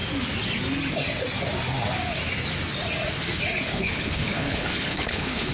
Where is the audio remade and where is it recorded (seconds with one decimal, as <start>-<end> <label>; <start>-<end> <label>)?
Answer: 0.0-3.7 recorded; 3.7-5.5 remade